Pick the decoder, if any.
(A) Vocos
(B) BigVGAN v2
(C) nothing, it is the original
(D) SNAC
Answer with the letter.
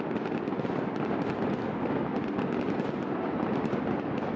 C